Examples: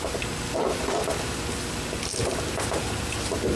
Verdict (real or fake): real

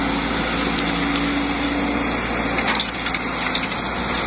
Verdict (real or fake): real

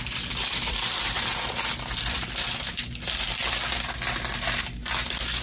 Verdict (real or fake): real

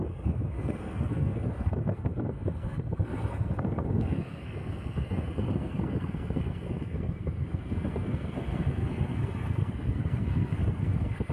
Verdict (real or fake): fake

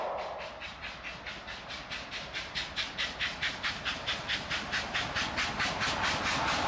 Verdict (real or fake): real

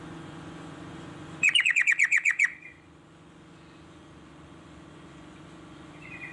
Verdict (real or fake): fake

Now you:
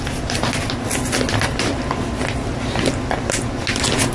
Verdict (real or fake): real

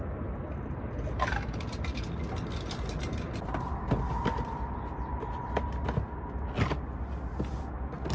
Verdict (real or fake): real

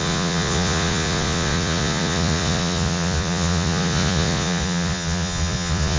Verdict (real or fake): fake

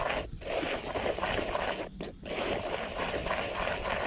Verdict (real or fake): real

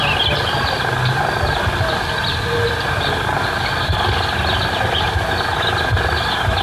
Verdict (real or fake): real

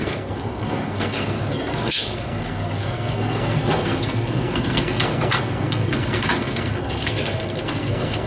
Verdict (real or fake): fake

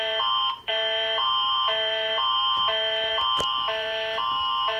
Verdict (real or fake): fake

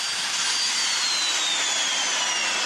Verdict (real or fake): real